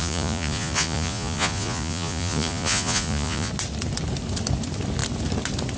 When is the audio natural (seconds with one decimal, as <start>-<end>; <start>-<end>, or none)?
3.5-5.8